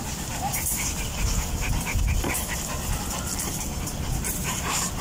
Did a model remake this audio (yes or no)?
no